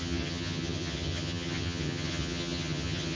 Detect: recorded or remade remade